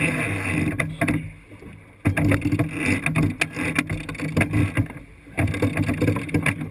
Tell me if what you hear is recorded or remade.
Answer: recorded